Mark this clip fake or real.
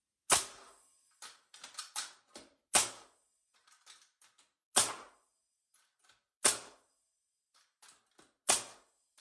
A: real